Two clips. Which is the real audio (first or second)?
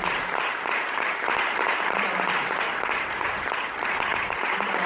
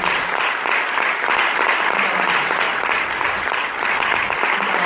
second